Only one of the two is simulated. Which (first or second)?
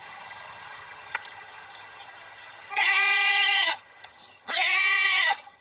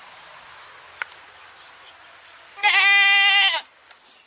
first